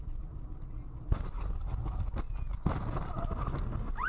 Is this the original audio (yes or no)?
yes